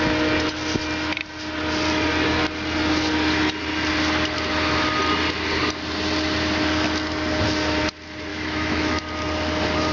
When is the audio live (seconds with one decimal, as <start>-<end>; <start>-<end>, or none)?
0.0-8.3; 9.0-9.9